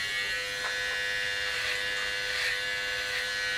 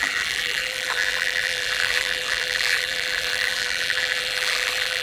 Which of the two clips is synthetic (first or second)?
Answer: second